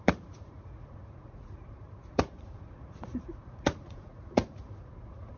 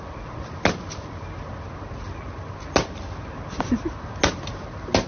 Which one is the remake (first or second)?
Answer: first